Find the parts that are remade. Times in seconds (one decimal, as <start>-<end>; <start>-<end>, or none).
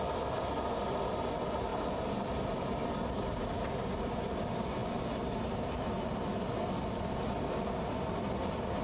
1.7-3.4; 4.8-5.8